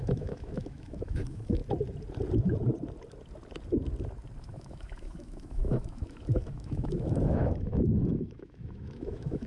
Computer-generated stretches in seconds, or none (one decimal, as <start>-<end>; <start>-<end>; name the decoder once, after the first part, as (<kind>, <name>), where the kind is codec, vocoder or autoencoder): 0.0-1.6 (autoencoder, DAC-VAE); 4.4-9.5